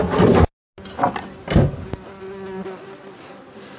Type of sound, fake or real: real